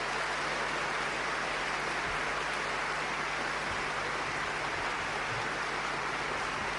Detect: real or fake real